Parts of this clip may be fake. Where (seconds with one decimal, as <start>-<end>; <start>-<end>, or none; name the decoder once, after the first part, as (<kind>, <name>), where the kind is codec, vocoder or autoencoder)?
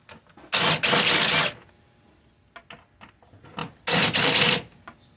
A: none